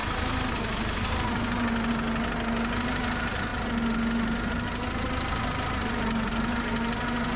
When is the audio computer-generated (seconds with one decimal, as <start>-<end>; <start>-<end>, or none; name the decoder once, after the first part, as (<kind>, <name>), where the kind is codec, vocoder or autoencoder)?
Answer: none